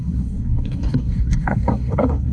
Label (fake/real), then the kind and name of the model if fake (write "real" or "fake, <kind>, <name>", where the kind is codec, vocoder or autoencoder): fake, codec, SNAC